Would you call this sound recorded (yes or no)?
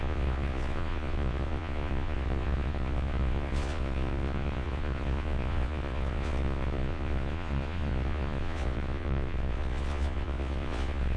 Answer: no